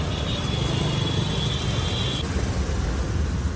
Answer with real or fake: real